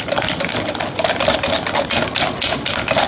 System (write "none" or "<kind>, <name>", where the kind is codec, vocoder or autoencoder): none